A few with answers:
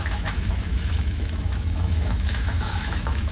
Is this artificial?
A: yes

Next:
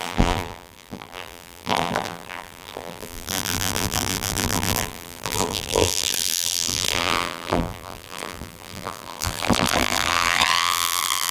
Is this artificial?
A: yes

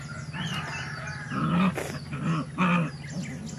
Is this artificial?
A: no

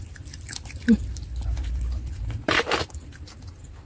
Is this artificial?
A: yes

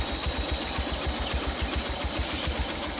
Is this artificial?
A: no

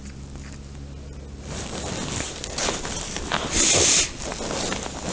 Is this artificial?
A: no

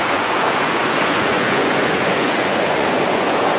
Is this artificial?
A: yes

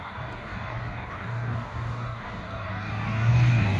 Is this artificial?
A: yes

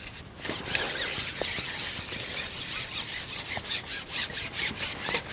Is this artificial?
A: no